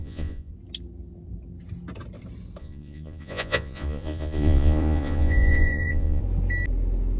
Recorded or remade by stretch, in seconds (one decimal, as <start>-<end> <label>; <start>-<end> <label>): 0.0-0.5 remade; 0.5-2.6 recorded; 2.6-6.2 remade; 6.2-7.2 recorded